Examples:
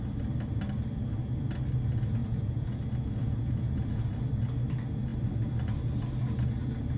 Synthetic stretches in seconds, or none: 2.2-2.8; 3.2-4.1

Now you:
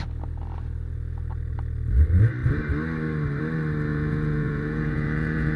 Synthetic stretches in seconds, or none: 3.9-5.6

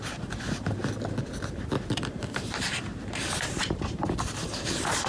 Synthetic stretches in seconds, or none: 0.0-0.8; 1.9-5.1

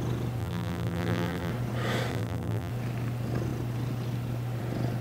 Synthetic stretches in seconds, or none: 0.4-1.5; 2.1-2.7